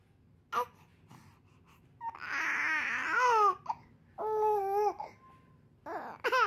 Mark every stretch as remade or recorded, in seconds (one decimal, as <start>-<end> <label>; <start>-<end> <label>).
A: 0.0-6.5 recorded